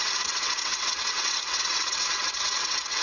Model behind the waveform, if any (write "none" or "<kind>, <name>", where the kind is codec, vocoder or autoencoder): vocoder, WaveNeXt